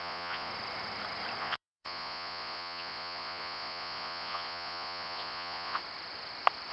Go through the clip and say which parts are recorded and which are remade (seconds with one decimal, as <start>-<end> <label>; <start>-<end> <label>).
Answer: 0.0-0.5 remade; 0.5-1.4 recorded; 1.4-5.8 remade; 5.8-6.7 recorded